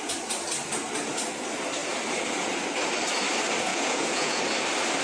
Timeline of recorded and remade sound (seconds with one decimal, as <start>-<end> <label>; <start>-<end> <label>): 0.0-3.7 recorded; 3.7-4.4 remade; 4.4-5.0 recorded